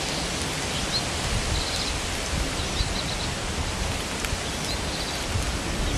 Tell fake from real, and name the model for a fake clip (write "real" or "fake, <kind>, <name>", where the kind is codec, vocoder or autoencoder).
real